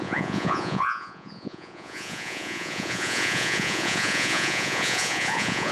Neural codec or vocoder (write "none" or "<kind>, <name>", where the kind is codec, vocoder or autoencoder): vocoder, Vocos